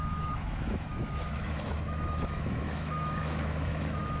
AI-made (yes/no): yes